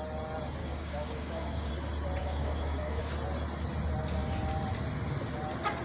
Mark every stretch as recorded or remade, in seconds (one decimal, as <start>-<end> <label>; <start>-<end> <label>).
0.0-0.6 recorded; 0.6-1.7 remade; 1.7-2.2 recorded; 2.2-3.0 remade; 3.0-5.8 recorded